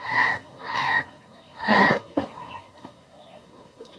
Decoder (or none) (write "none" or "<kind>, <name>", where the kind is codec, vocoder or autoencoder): codec, SNAC